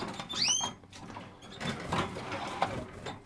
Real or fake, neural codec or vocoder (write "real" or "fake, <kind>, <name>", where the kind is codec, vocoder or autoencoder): real